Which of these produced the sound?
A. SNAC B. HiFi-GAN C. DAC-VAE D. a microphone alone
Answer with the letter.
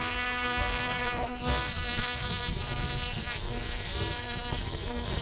A